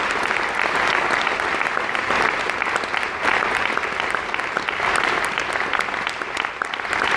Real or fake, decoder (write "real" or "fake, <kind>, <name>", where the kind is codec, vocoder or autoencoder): real